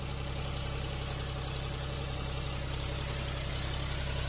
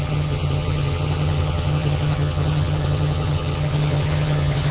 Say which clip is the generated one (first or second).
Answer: second